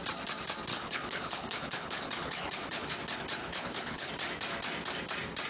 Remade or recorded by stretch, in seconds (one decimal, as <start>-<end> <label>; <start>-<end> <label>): 0.0-0.7 recorded; 0.7-2.9 remade; 2.9-3.4 recorded; 3.4-4.1 remade; 4.1-5.5 recorded